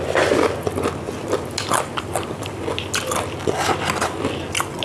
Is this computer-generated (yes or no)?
no